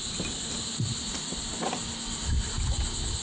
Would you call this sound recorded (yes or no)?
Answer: yes